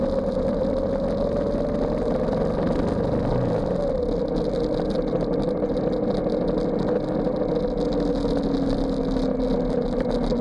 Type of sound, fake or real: real